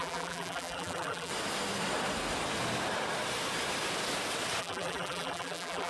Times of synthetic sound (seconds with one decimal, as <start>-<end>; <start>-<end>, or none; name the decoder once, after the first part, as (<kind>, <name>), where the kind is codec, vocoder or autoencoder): 0.0-1.3 (vocoder, BigVGAN v2); 4.6-5.9